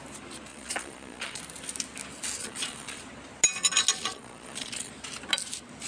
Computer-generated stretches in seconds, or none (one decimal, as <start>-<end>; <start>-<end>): 0.5-1.4; 2.4-3.0; 3.9-4.9